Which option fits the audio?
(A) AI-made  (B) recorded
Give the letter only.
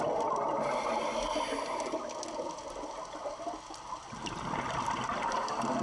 B